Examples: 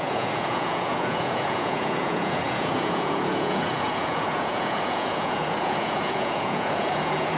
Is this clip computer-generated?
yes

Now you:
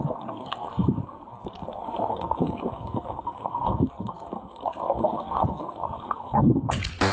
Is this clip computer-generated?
yes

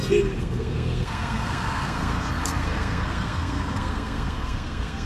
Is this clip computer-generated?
yes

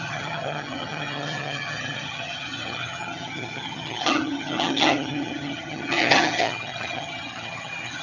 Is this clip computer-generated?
yes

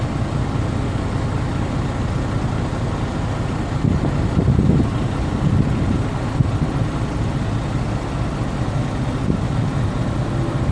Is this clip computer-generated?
no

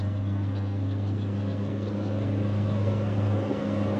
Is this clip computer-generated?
yes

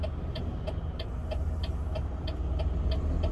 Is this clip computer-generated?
no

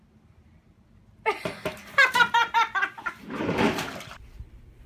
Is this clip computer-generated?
yes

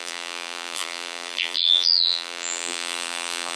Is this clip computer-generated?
yes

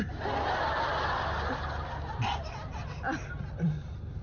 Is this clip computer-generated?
no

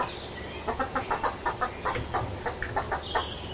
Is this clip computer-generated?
no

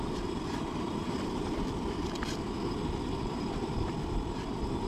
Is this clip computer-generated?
yes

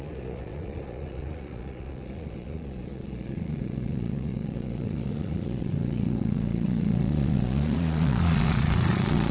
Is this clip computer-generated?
yes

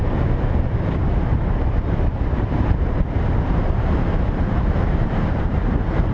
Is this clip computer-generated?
yes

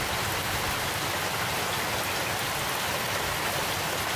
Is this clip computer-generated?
no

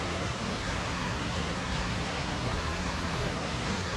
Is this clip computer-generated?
yes